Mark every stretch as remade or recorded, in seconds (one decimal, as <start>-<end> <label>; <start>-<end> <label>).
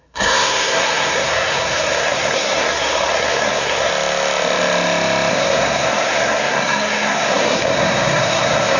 0.0-3.9 remade; 3.9-5.3 recorded; 5.3-8.8 remade